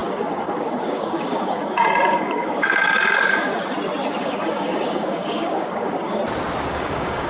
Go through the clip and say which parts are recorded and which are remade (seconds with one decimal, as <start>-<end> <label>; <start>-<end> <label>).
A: 0.0-3.5 remade; 3.5-4.2 recorded; 4.2-6.2 remade; 6.2-6.7 recorded; 6.7-7.3 remade